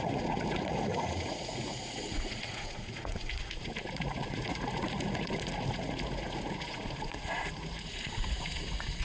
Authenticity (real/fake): fake